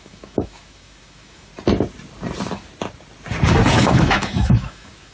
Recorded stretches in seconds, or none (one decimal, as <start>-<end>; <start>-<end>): 1.5-3.7